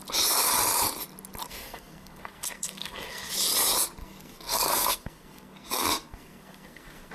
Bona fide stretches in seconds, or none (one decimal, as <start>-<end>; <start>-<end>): 0.0-1.4; 3.3-4.0